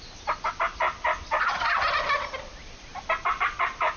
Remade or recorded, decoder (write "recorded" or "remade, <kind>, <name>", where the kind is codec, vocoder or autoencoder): recorded